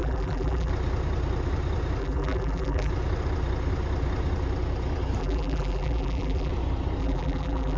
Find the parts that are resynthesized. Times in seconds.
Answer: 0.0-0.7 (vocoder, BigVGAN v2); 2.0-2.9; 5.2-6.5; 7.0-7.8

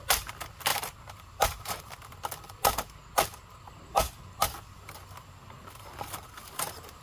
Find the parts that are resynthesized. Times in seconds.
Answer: 0.7-1.9 (vocoder, BigVGAN v2)

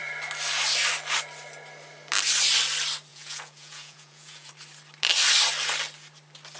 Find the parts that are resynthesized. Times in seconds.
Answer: 3.1-4.5 (vocoder, Vocos)

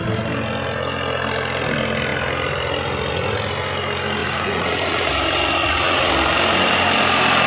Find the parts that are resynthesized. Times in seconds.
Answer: 4.2-5.1 (vocoder, Vocos); 5.6-6.1

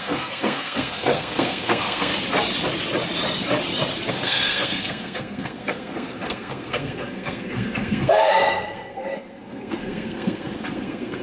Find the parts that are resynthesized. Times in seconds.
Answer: 0.0-2.1 (codec, SNAC); 4.1-11.2